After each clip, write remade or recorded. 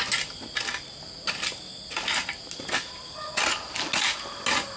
recorded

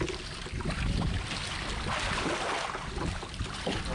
recorded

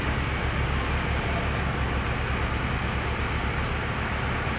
recorded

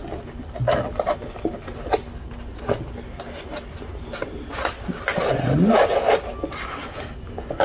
recorded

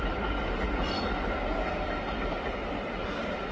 recorded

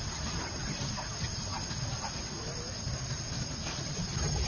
recorded